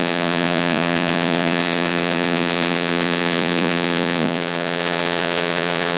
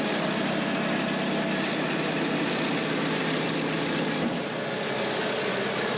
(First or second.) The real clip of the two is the second